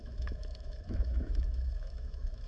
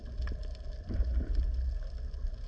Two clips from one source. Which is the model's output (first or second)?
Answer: first